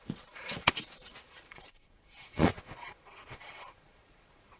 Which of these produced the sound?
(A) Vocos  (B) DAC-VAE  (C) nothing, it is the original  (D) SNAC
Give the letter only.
A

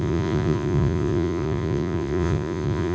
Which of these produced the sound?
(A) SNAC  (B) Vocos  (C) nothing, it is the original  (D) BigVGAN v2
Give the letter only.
B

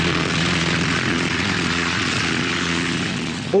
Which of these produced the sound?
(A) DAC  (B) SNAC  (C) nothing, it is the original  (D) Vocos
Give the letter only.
D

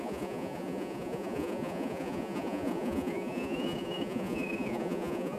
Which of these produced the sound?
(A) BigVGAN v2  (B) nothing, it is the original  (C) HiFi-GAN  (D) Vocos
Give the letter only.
D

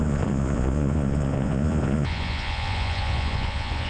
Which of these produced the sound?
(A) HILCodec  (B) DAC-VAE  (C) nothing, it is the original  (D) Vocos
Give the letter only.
D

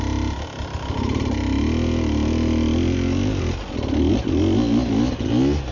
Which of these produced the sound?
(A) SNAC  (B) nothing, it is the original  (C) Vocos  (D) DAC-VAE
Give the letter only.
B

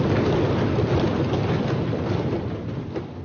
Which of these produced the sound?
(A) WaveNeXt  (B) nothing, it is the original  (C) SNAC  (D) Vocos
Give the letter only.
B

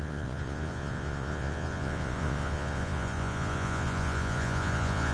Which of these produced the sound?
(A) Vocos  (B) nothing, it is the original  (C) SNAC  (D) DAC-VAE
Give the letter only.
A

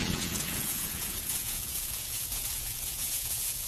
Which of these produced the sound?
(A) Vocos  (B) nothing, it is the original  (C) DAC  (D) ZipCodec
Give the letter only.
A